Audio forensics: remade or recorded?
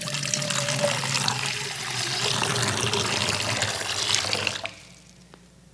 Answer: recorded